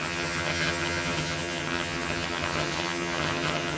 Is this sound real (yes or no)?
no